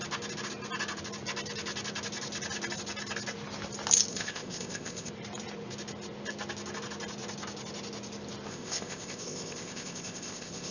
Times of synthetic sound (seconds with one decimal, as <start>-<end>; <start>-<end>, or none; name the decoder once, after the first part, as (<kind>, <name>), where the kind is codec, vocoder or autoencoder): 4.1-5.1 (codec, ZipCodec); 8.5-10.7